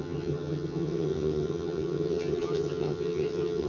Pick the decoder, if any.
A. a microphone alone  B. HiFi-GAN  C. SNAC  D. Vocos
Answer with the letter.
B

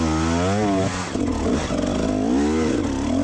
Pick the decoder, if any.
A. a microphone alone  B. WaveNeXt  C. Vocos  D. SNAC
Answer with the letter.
A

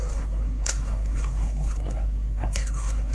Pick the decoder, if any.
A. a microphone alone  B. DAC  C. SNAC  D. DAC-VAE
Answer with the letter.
C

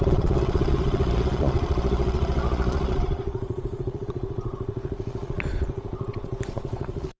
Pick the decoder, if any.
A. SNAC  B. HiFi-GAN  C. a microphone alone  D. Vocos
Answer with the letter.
D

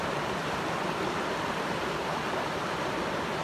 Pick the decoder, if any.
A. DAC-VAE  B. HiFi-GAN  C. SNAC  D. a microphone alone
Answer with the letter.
D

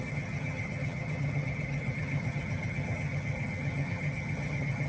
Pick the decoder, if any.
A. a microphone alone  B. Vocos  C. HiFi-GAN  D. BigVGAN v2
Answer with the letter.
C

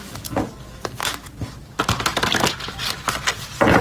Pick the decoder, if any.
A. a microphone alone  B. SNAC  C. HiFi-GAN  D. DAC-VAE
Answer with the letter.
A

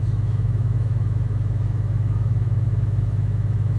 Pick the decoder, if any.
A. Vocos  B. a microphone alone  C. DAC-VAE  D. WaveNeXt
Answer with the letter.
C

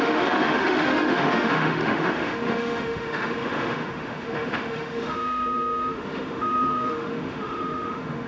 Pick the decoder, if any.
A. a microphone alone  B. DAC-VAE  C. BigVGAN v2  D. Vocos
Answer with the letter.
B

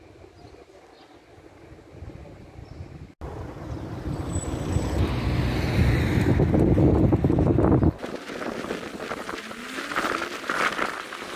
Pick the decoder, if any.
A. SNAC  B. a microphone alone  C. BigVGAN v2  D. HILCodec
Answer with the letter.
B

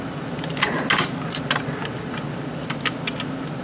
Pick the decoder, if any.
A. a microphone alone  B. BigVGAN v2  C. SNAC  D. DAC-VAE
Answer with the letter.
A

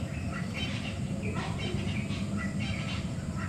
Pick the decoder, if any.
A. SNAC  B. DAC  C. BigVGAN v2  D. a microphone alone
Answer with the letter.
C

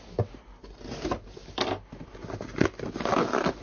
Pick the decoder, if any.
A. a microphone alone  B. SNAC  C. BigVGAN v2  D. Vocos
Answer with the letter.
A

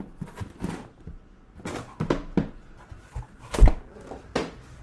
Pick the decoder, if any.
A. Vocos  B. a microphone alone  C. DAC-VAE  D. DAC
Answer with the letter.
B